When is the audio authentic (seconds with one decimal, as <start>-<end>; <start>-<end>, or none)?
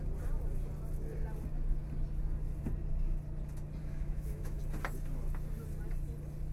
0.0-3.8; 4.6-6.5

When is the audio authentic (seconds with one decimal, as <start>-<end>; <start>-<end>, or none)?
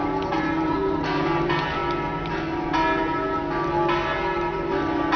1.8-5.2